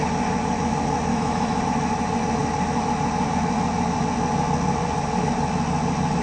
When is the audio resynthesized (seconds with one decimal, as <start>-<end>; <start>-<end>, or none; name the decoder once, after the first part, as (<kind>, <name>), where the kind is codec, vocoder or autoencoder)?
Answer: 1.1-1.6 (autoencoder, DAC-VAE)